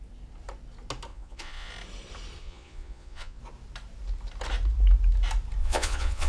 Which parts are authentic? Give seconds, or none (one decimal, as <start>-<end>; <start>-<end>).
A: 0.0-1.1; 1.7-2.4; 3.4-5.6